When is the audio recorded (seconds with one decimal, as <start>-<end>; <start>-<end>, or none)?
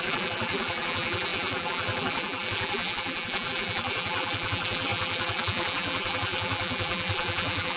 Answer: none